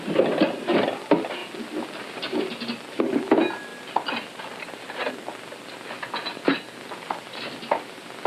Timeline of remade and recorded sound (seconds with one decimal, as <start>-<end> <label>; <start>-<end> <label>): 0.0-8.3 recorded